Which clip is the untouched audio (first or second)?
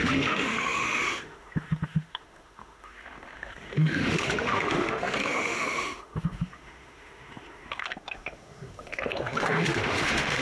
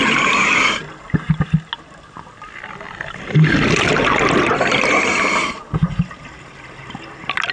second